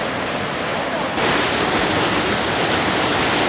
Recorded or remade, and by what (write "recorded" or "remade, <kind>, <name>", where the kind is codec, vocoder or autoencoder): recorded